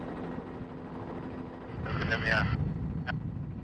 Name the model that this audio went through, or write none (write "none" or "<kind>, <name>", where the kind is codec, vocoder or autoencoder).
none